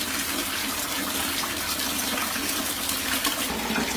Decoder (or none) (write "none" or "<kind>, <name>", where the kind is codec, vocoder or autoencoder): none